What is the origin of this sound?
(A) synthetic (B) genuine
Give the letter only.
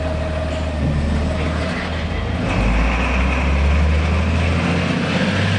B